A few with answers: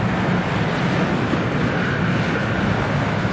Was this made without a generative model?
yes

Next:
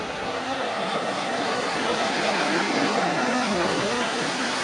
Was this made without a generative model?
no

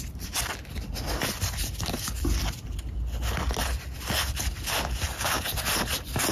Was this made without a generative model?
yes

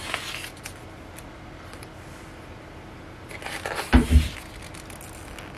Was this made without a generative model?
yes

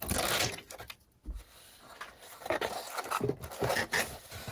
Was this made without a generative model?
yes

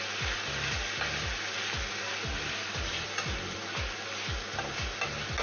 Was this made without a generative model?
yes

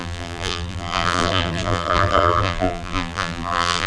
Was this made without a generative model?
no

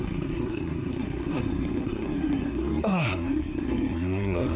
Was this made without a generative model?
no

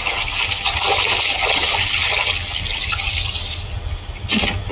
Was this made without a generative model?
yes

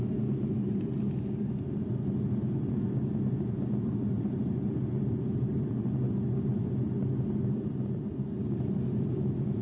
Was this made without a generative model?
yes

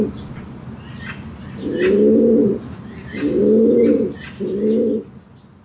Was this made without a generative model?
yes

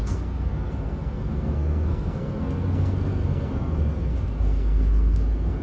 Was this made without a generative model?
no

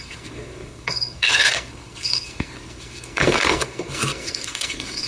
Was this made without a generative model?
no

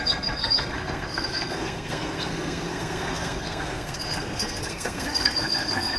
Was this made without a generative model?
no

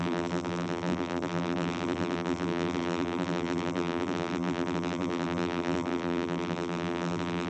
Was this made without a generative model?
no